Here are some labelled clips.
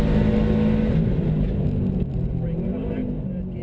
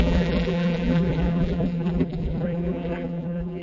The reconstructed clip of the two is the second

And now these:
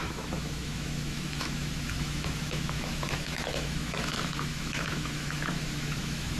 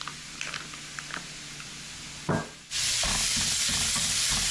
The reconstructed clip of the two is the first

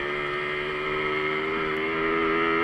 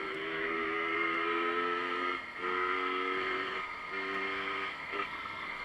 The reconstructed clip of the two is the second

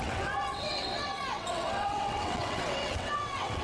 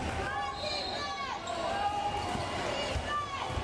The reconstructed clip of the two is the first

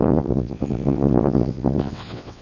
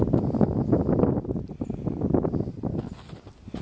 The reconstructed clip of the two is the first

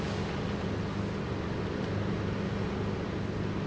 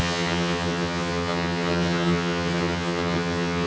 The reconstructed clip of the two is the second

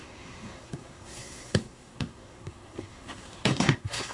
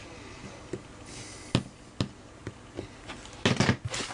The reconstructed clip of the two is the first